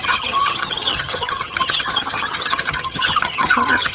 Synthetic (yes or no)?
yes